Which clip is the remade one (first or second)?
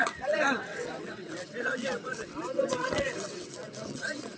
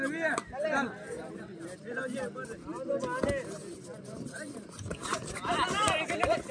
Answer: first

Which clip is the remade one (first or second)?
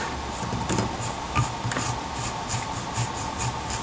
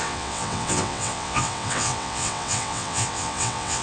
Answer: second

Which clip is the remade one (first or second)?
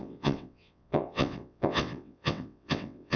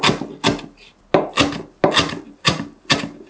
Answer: first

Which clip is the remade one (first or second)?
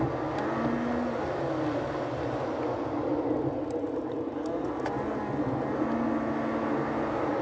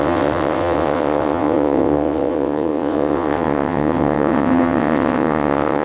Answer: second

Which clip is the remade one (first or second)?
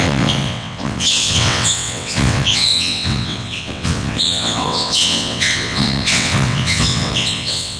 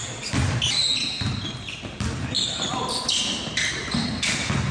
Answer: first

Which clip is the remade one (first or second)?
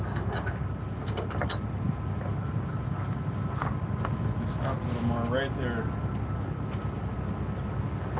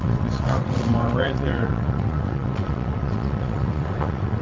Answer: second